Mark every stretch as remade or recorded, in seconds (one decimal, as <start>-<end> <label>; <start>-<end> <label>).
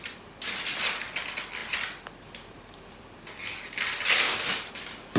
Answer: 0.0-5.2 recorded